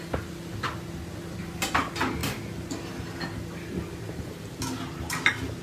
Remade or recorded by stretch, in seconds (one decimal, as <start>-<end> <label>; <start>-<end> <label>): 0.0-5.6 recorded